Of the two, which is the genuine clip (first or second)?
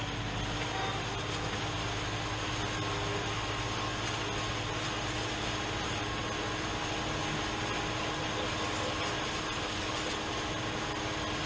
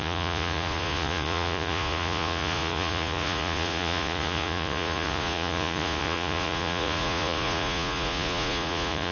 first